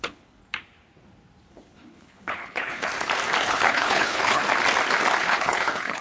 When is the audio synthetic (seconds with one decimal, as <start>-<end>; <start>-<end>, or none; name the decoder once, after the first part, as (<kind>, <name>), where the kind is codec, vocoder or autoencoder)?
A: 0.0-0.4 (codec, HILCodec); 1.5-2.9; 3.4-4.4; 5.2-6.0

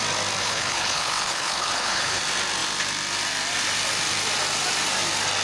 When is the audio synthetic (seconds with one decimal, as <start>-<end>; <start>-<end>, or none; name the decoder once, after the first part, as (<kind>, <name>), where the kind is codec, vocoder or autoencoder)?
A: 0.4-2.2 (codec, HILCodec)

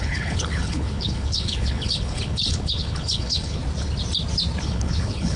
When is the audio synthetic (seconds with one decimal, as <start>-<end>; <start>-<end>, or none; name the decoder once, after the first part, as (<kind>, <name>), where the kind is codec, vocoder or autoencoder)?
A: 0.0-3.6 (codec, HILCodec); 4.6-5.4

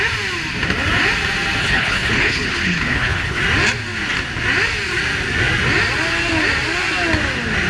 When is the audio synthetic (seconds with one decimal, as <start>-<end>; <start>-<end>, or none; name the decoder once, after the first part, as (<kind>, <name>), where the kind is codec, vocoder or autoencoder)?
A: 1.6-3.4 (codec, HILCodec)

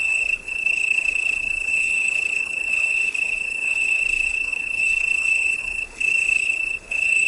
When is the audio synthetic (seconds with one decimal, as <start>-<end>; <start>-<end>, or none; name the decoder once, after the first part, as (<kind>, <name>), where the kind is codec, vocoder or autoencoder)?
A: 0.0-7.3 (codec, HILCodec)